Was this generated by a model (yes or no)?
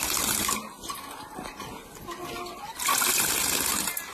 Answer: no